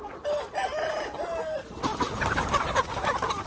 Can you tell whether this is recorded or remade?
remade